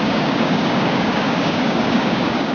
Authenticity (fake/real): fake